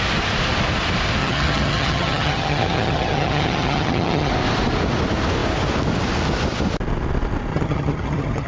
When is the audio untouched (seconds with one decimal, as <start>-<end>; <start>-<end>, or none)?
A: 0.0-1.2; 4.3-7.5